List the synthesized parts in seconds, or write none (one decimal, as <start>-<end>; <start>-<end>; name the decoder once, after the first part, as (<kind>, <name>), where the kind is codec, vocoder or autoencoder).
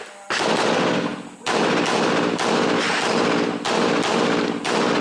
none